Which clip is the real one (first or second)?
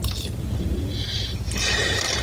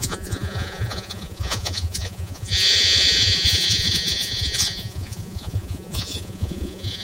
first